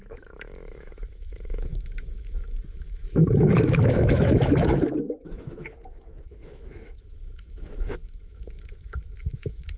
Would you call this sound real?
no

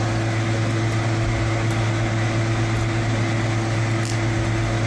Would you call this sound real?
yes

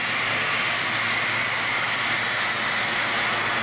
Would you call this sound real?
yes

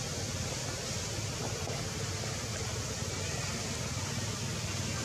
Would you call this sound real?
yes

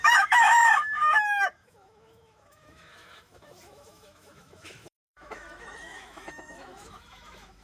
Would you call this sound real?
no